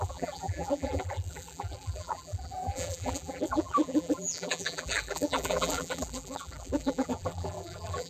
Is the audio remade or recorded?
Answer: remade